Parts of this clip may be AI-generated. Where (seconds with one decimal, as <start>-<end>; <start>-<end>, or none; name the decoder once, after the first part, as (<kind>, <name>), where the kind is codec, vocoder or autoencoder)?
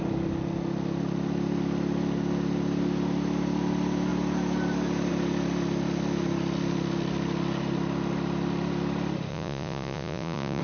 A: 9.3-10.6 (vocoder, Vocos)